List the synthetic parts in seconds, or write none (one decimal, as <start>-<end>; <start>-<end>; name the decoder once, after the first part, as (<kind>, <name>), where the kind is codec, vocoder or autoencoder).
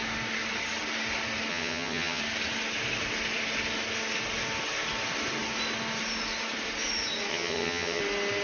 1.5-2.2 (vocoder, HiFi-GAN); 7.3-8.0